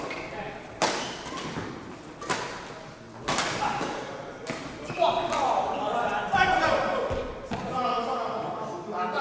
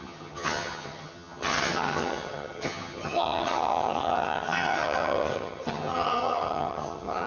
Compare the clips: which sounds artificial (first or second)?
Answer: second